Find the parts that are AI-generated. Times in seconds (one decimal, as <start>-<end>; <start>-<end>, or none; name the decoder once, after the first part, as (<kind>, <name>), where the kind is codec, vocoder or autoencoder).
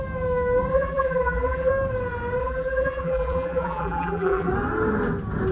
0.7-1.7 (vocoder, BigVGAN v2); 2.4-4.5